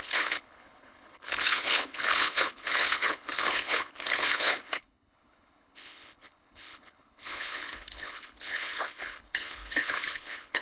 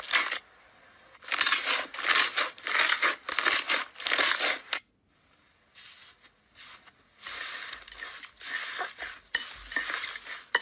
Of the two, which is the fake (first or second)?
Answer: first